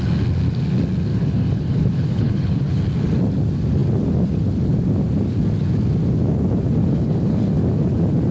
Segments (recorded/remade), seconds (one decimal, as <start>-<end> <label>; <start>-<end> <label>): 0.0-1.1 recorded; 1.1-2.8 remade; 2.8-6.8 recorded; 6.8-7.6 remade; 7.6-8.3 recorded